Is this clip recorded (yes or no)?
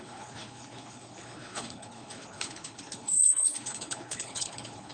no